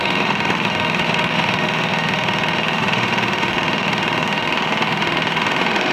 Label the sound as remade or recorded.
remade